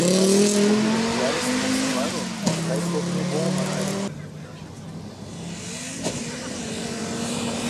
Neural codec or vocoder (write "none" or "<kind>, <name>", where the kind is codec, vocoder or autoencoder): none